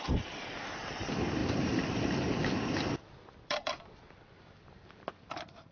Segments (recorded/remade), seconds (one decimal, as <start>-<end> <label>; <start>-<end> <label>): 0.0-1.4 recorded; 1.4-4.8 remade; 4.8-5.7 recorded